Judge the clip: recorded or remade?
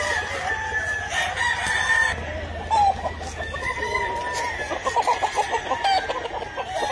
recorded